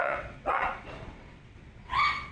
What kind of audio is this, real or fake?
fake